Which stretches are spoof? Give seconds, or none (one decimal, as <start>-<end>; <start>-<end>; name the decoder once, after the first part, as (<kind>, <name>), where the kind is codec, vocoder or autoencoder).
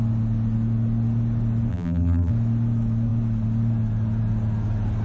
1.7-2.3 (vocoder, BigVGAN v2)